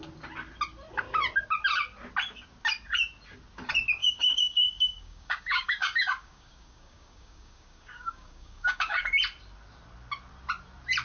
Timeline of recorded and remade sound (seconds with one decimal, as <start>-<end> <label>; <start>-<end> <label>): 0.0-4.0 recorded; 4.0-9.0 remade; 9.0-11.0 recorded